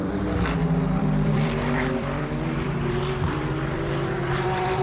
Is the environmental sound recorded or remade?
remade